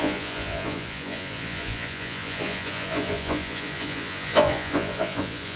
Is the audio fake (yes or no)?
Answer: yes